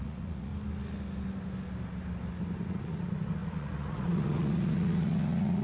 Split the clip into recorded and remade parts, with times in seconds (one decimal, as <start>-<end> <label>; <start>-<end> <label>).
0.0-0.5 remade; 0.5-2.6 recorded; 2.6-5.6 remade